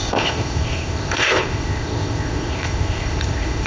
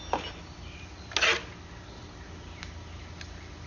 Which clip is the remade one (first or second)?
first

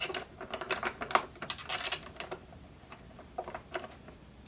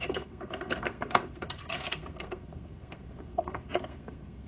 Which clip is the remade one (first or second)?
second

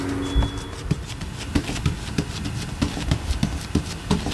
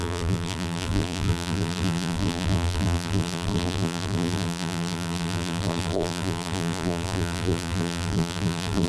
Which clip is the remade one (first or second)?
second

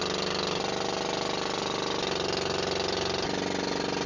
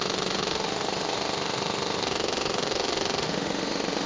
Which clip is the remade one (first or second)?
second